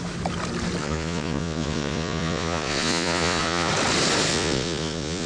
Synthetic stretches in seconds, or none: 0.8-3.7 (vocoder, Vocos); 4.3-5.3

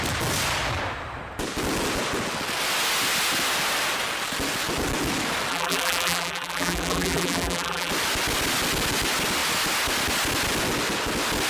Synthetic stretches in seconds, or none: 5.5-7.9 (vocoder, BigVGAN v2)

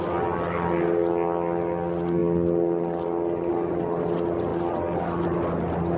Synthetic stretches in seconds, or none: none

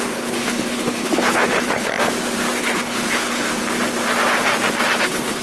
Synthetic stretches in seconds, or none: 0.0-1.9 (codec, HILCodec); 2.6-3.5; 5.0-5.4

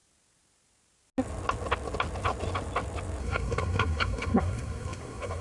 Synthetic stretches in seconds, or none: 3.2-5.4 (codec, SNAC)

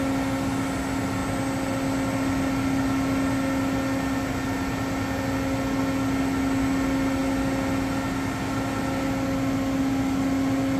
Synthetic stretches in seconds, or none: none

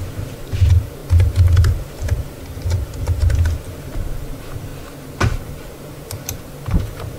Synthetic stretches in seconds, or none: 0.0-4.7 (vocoder, BigVGAN v2); 5.4-7.2

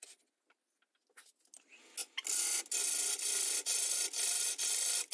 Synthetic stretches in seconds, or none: none